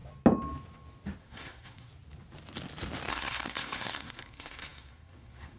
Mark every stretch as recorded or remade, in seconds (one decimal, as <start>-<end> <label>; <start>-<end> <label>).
0.0-1.2 recorded; 1.2-1.9 remade; 1.9-3.1 recorded; 3.1-5.6 remade